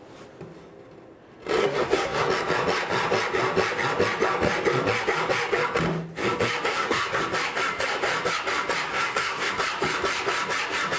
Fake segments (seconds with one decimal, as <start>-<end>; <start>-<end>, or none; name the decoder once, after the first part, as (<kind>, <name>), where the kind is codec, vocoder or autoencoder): 1.6-2.3 (codec, SNAC); 6.7-7.2; 8.9-9.5